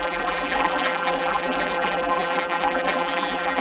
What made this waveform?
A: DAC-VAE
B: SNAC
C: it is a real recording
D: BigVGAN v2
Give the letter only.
D